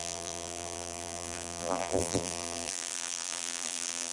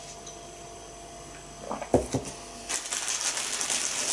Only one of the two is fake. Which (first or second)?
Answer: first